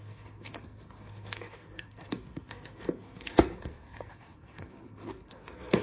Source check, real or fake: fake